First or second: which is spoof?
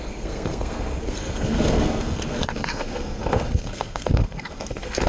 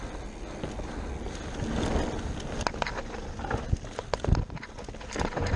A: first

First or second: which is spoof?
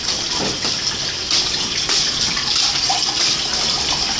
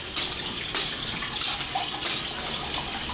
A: first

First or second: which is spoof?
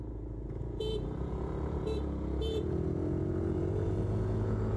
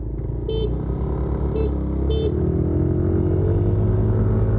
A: first